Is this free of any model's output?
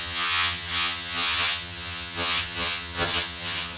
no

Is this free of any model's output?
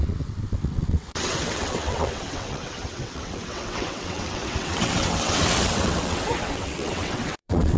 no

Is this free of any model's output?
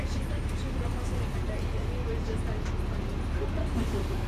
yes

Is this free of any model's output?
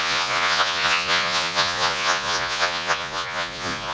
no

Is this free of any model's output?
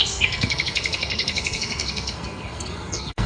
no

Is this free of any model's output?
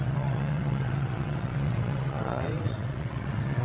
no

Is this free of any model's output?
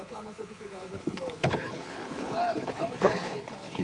no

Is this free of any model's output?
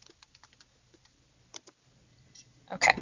yes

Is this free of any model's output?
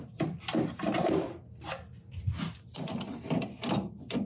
yes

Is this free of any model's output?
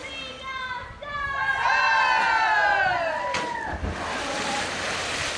yes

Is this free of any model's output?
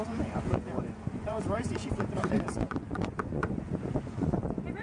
no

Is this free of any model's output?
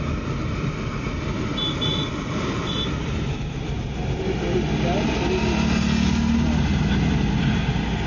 yes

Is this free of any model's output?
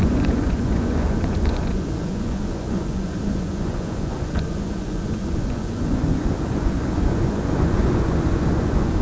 no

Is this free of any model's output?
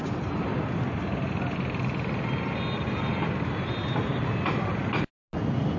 yes